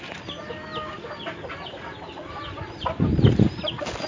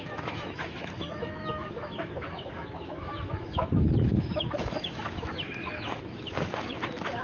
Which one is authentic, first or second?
first